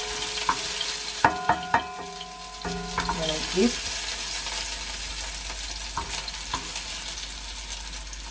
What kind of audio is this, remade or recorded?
recorded